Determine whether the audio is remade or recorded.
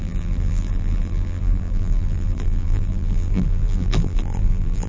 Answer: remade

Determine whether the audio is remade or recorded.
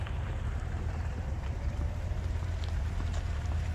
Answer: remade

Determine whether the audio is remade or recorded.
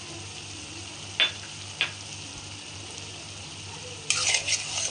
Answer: recorded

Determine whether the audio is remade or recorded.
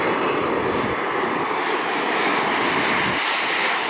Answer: remade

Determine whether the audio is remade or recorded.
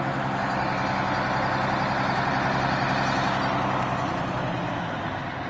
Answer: recorded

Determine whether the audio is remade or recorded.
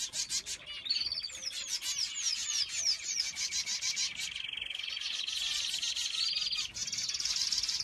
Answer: recorded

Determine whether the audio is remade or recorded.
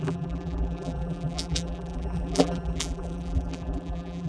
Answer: remade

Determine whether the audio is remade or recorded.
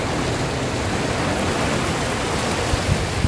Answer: recorded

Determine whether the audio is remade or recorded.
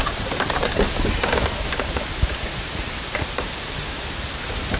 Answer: remade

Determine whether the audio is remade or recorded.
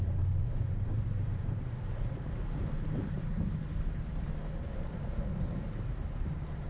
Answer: remade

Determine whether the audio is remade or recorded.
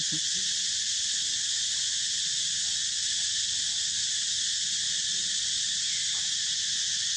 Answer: recorded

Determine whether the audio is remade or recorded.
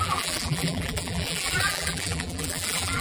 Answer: remade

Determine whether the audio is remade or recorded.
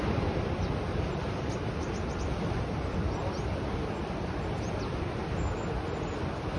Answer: recorded